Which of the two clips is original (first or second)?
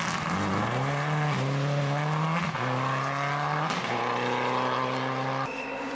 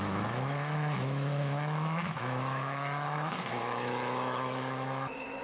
first